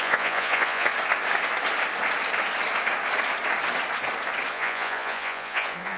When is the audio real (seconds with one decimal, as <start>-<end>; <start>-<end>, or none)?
0.9-4.5